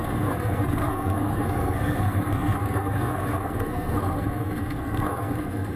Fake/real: fake